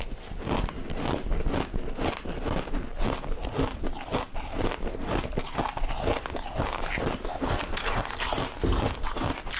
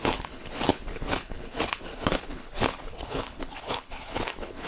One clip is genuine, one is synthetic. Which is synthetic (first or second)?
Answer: second